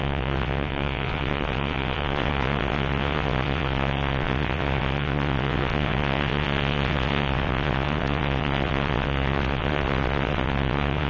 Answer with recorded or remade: remade